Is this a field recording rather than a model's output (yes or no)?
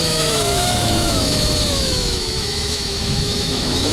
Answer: no